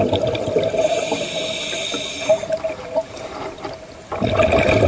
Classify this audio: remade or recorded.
recorded